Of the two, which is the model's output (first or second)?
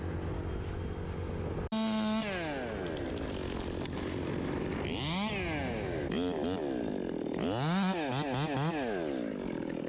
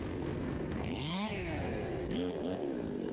second